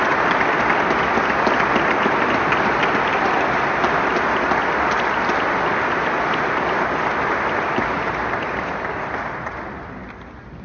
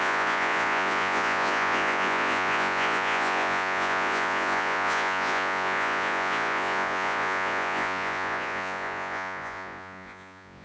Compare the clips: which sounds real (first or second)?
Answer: first